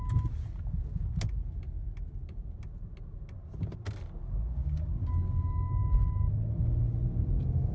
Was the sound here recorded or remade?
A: recorded